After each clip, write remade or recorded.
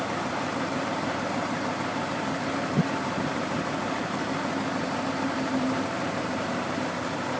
remade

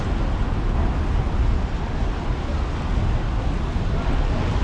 recorded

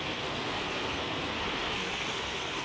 remade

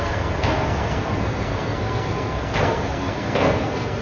remade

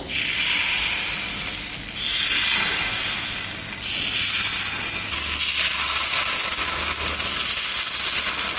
recorded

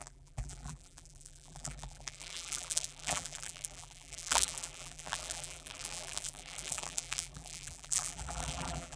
remade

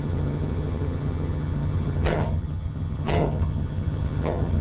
remade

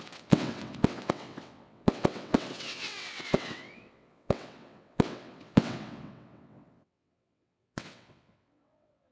remade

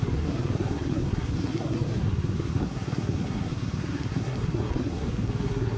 remade